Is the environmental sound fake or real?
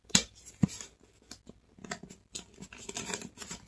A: real